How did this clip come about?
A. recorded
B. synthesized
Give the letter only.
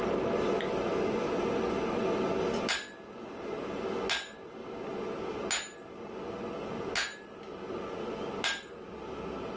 A